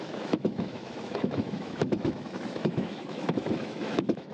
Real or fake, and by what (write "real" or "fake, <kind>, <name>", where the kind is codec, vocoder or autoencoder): fake, autoencoder, DAC-VAE